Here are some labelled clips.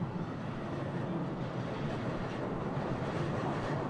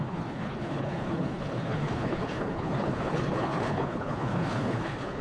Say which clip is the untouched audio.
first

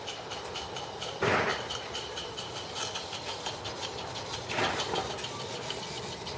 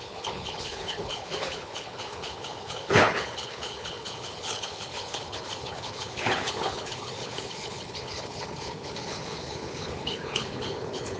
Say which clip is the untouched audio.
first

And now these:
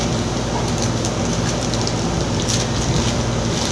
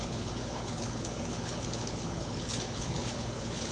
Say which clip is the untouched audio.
first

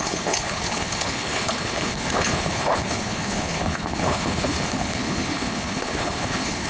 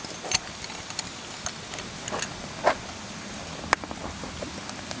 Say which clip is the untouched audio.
second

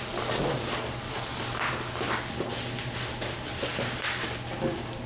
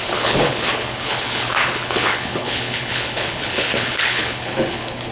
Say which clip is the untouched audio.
first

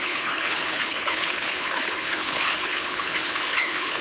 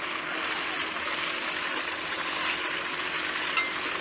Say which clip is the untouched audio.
second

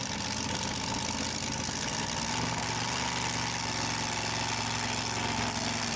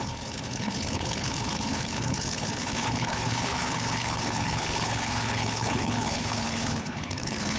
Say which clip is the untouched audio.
first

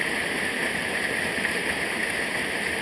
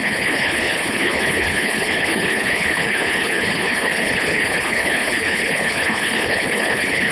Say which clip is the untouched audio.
first